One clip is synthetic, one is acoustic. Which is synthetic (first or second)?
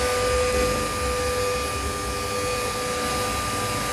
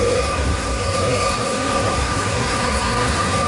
second